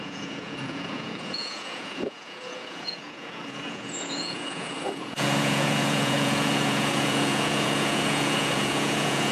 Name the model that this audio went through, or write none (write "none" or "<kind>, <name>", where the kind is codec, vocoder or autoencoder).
vocoder, Vocos